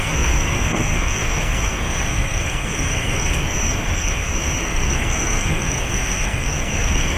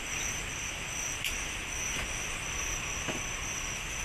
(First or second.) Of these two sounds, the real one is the second